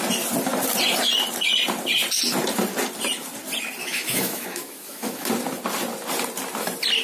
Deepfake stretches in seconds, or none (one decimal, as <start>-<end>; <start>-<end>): 3.8-5.3